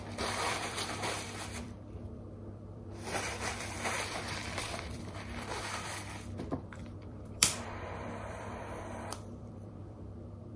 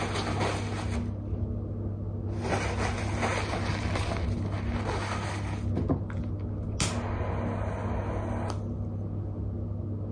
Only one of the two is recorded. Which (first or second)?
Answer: second